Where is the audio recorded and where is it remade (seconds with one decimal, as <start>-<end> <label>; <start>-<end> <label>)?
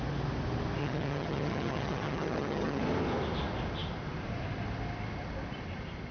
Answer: 0.0-0.8 recorded; 0.8-2.8 remade; 2.8-6.1 recorded